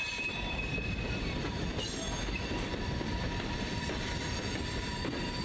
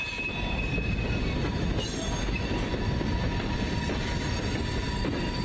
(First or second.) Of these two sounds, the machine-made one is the first